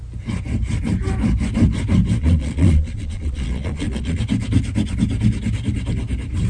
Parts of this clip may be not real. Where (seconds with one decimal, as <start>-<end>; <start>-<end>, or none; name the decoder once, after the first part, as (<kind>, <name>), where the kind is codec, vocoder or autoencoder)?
2.2-4.2 (vocoder, Vocos)